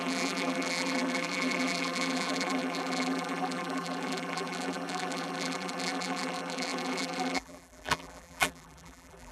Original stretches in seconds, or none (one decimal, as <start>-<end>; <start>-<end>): none